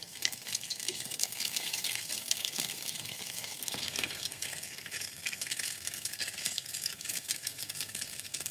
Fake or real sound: fake